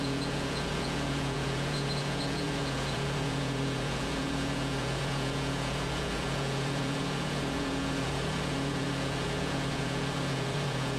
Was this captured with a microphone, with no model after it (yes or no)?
no